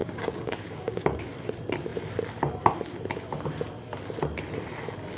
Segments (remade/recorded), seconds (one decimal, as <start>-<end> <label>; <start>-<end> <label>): 0.0-1.2 remade; 1.2-5.2 recorded